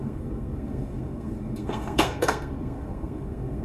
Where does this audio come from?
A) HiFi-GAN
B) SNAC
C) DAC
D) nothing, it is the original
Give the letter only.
B